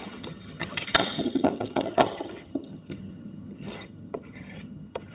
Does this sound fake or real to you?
fake